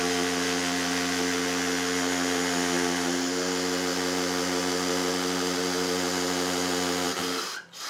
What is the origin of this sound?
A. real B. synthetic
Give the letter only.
A